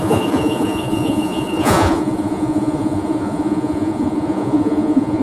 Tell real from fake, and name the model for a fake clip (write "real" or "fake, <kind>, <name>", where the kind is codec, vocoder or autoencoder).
fake, vocoder, Vocos